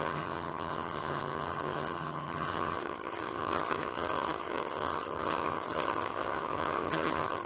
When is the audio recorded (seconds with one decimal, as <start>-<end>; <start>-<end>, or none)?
none